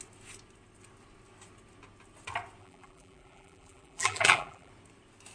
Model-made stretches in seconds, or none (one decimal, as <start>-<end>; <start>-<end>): 2.6-4.7